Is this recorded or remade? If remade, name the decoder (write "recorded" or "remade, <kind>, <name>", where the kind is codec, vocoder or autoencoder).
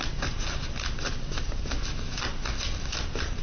recorded